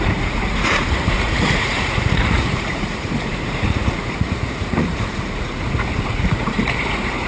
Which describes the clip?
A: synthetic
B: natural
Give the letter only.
A